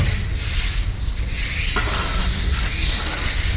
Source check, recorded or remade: recorded